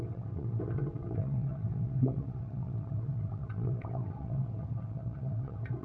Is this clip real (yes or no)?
no